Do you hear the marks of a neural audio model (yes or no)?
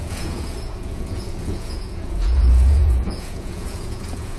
yes